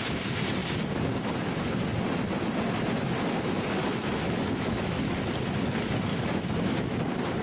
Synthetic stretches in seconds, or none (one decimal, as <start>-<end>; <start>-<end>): 3.8-5.2; 6.1-7.0